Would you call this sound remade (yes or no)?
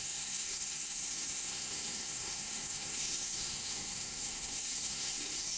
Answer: yes